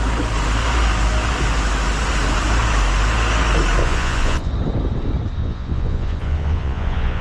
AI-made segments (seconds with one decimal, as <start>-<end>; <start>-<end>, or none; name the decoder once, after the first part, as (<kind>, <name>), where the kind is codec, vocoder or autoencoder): 3.8-4.5 (vocoder, Vocos); 5.4-7.2